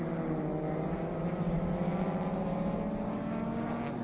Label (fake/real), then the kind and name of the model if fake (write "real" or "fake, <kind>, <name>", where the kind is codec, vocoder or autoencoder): real